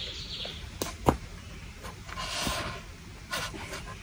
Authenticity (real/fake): real